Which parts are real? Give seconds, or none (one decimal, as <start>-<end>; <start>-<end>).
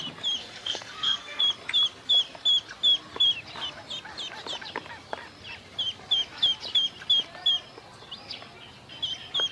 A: 0.0-0.4; 1.4-9.5